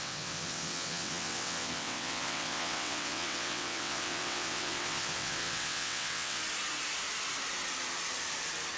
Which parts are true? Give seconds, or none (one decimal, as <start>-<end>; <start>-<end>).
6.4-8.8